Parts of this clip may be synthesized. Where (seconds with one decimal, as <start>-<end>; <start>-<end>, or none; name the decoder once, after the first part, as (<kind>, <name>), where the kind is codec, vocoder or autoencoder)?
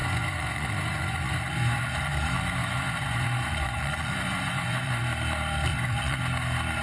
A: 0.0-2.1 (vocoder, Vocos); 2.6-5.0; 5.7-6.2